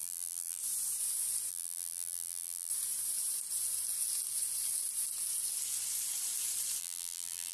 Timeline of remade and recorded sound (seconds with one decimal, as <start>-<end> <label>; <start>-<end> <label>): 0.0-0.6 remade; 0.6-1.5 recorded; 1.5-2.7 remade; 2.7-6.8 recorded; 6.8-7.5 remade